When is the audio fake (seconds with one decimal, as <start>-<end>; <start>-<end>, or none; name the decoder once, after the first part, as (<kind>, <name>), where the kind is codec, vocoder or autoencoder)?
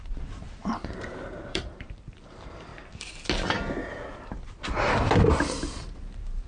0.0-2.7 (vocoder, BigVGAN v2); 6.0-6.5